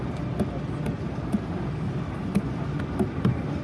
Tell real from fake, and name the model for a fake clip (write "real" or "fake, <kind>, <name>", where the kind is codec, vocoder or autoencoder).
real